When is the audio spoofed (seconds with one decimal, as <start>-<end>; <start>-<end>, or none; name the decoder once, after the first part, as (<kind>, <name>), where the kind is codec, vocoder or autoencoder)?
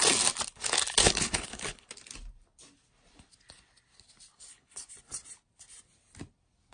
1.0-1.9 (codec, HILCodec); 4.3-4.9